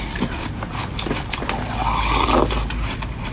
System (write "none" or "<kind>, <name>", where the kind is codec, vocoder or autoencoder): none